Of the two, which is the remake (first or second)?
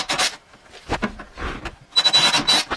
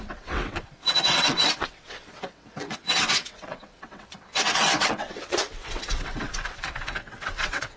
second